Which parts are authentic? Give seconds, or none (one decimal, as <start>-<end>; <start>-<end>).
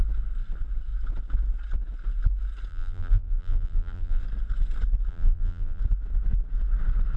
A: 0.0-2.7; 4.2-5.1; 5.8-7.2